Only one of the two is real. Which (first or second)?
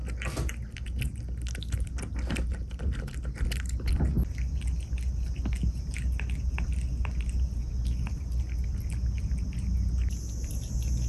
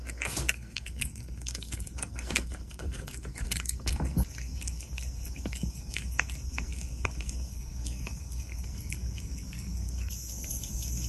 first